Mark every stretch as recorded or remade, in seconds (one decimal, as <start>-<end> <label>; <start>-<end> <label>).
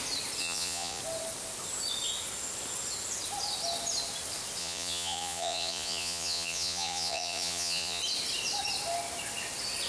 0.0-0.4 recorded; 0.4-1.0 remade; 1.0-4.6 recorded; 4.6-8.0 remade; 8.0-9.9 recorded